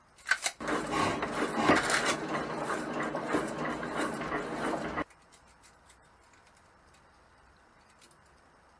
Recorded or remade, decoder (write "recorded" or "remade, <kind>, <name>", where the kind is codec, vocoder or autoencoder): recorded